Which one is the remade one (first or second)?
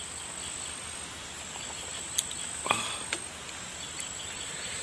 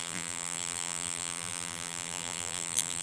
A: second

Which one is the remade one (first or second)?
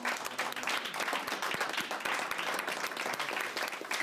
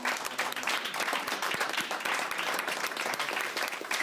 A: second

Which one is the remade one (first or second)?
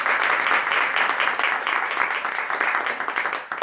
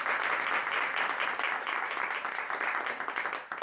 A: second